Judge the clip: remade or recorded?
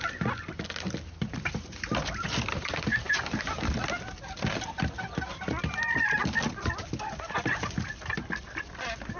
recorded